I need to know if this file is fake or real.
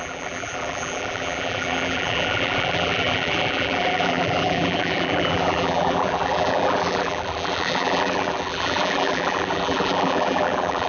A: fake